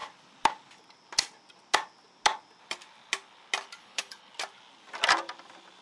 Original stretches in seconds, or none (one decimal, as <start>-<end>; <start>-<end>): 0.0-3.8; 4.3-5.8